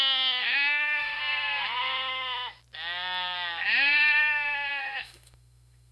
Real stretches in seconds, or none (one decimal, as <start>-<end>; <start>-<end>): 1.2-4.7